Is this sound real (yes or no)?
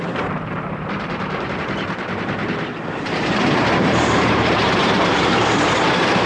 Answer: no